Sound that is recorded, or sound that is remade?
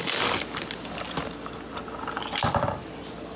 recorded